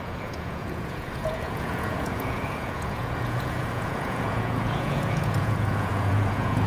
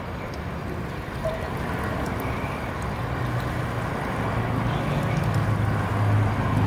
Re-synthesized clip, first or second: first